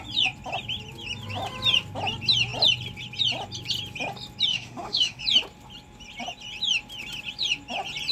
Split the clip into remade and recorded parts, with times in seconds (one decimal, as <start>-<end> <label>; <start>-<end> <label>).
0.0-4.5 recorded; 4.5-5.2 remade; 5.2-8.1 recorded